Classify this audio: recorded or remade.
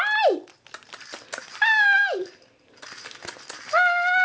recorded